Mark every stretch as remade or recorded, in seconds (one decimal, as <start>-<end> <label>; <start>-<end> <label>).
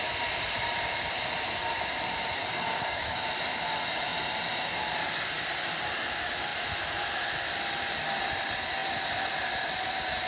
0.0-2.4 recorded; 2.4-3.2 remade; 3.2-10.3 recorded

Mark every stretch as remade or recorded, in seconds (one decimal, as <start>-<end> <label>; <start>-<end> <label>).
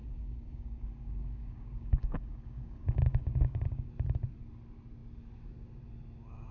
0.0-3.9 remade; 3.9-6.5 recorded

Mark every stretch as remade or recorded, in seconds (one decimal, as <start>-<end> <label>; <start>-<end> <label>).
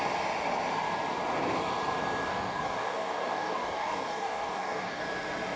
0.0-2.3 recorded; 2.3-5.0 remade; 5.0-5.6 recorded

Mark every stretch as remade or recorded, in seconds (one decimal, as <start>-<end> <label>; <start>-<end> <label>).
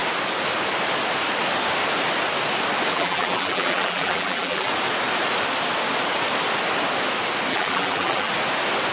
0.0-2.9 recorded; 2.9-4.7 remade; 4.7-7.5 recorded; 7.5-8.3 remade; 8.3-8.9 recorded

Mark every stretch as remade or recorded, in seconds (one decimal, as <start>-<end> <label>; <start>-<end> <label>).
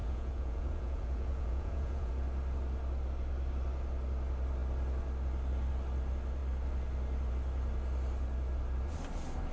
0.0-2.1 remade; 2.1-9.5 recorded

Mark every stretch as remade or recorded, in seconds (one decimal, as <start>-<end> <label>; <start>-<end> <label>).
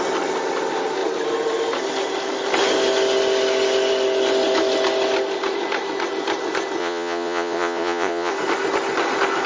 0.0-6.8 recorded; 6.8-8.3 remade; 8.3-9.5 recorded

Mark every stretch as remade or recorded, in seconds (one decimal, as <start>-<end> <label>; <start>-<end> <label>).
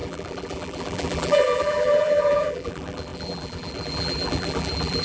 0.0-5.0 remade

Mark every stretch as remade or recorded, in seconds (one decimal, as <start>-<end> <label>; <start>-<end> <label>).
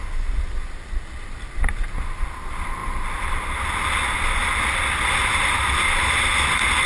0.0-6.9 recorded